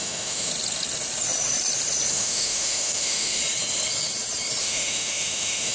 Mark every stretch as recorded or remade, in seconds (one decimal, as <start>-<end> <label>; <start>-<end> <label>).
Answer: 0.0-0.5 remade; 0.5-2.1 recorded; 2.1-3.4 remade; 3.4-4.6 recorded; 4.6-5.7 remade